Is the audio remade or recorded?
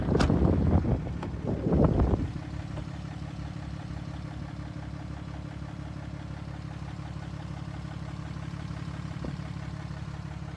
recorded